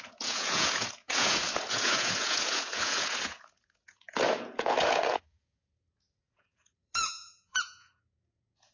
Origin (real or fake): fake